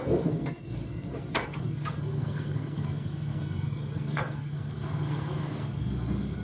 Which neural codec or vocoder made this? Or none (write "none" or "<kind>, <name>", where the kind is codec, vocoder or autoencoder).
codec, SNAC